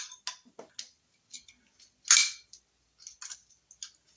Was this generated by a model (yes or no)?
no